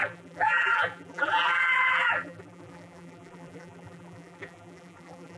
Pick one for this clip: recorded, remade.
remade